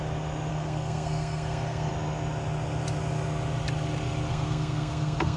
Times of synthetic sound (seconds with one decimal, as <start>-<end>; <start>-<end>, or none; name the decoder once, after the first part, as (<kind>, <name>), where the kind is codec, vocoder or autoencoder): 0.5-1.9 (codec, SNAC); 4.3-5.4